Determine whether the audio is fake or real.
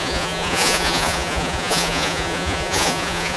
fake